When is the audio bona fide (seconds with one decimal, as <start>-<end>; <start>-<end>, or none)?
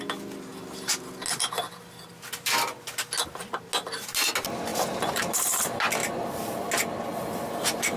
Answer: 0.0-4.7; 5.6-6.0; 6.7-8.0